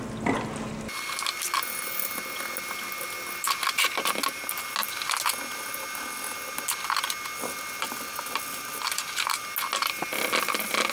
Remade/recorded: recorded